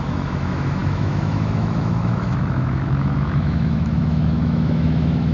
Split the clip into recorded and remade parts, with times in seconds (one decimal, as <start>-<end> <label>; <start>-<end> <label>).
0.0-5.3 remade

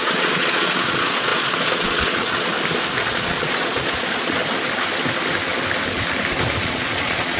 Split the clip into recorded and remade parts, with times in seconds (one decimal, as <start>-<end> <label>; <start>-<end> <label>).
0.0-2.5 remade; 2.5-3.0 recorded; 3.0-4.4 remade; 4.4-6.6 recorded; 6.6-7.4 remade